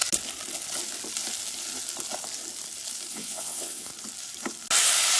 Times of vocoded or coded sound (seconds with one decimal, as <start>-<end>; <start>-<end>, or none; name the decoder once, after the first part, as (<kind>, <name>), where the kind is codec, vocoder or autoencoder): 3.1-3.9 (vocoder, WaveNeXt)